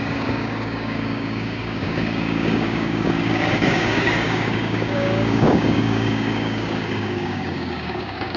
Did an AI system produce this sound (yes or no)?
yes